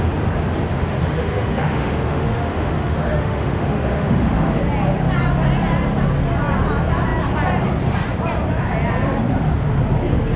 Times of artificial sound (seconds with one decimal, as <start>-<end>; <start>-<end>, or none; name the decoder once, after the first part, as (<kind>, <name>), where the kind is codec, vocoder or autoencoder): 0.7-4.6 (autoencoder, DAC-VAE)